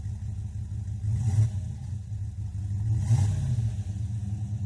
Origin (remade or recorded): recorded